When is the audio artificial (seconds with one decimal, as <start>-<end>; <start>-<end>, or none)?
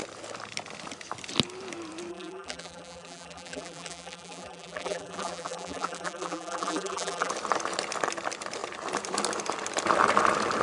2.1-7.3